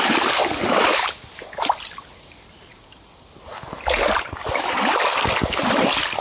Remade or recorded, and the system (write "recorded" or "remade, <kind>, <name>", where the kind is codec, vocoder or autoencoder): recorded